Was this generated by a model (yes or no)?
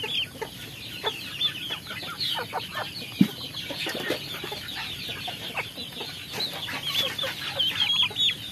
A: no